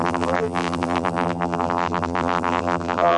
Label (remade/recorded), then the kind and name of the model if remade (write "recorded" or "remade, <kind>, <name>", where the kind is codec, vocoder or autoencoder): remade, vocoder, BigVGAN v2